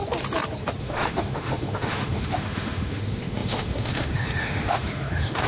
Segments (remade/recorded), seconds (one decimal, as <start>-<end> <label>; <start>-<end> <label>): 0.0-0.8 recorded; 0.8-5.5 remade